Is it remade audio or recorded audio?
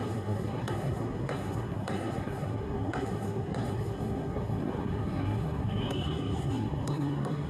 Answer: remade